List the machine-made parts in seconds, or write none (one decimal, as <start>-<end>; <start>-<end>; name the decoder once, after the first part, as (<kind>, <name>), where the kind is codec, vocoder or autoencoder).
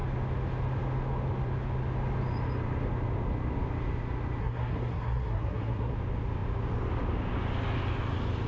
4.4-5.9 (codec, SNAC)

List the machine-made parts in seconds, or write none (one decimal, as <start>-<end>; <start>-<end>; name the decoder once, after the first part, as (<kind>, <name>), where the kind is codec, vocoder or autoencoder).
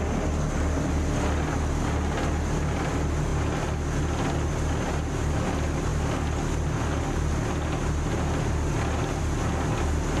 none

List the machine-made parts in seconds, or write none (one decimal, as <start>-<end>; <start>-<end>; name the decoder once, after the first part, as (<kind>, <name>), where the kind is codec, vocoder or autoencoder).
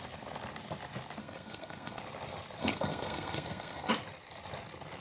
1.2-2.0 (codec, SNAC); 2.6-3.9